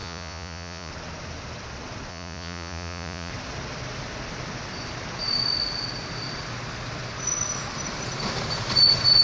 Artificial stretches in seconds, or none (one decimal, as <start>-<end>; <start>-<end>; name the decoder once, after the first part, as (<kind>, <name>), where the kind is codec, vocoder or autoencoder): 0.0-0.9 (vocoder, Vocos); 2.1-3.3